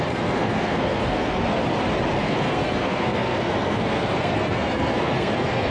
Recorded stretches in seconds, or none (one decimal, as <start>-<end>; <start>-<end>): 1.6-2.1